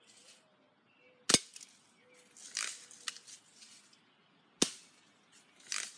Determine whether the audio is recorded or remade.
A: recorded